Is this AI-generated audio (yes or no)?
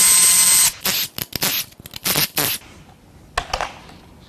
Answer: no